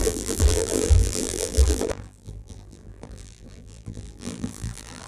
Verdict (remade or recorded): remade